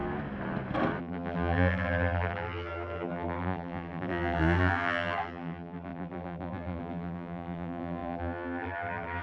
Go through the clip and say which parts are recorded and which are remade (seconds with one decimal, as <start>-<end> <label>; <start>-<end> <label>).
0.0-1.0 recorded; 1.0-9.2 remade